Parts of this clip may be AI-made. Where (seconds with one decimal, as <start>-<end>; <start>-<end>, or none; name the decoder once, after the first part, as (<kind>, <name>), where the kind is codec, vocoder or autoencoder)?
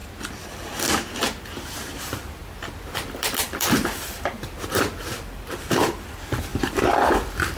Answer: 2.0-7.6 (vocoder, BigVGAN v2)